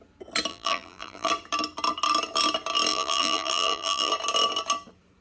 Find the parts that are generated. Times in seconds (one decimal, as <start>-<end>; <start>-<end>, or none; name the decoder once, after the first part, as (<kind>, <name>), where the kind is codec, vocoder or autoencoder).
0.5-1.3 (vocoder, BigVGAN v2); 2.9-4.1